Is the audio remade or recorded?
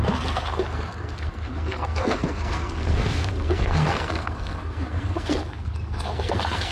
remade